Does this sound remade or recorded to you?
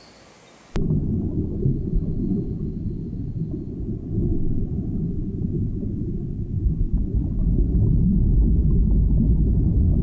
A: recorded